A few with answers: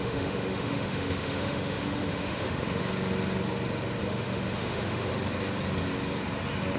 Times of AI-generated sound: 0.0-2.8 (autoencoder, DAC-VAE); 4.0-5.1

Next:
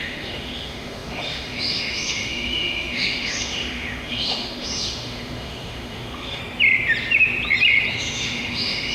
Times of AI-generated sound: 0.0-6.4 (autoencoder, DAC-VAE); 7.9-8.9

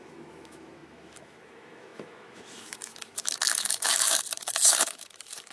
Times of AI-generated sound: 0.0-5.5 (autoencoder, DAC-VAE)

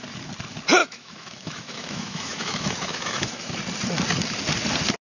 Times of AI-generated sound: 0.8-3.5 (autoencoder, DAC-VAE)

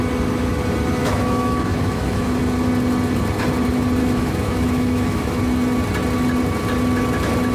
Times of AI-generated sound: 1.0-2.4 (autoencoder, DAC-VAE); 4.0-5.4

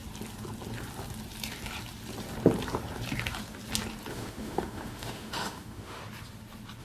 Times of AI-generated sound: 4.1-6.0 (autoencoder, DAC-VAE)

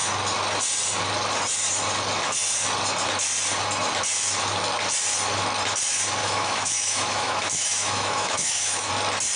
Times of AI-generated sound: 6.2-8.9 (autoencoder, DAC-VAE)